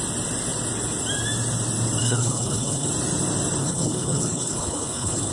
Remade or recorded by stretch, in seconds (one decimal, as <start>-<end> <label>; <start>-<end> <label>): 0.0-2.0 recorded; 2.0-2.9 remade; 2.9-3.6 recorded; 3.6-5.3 remade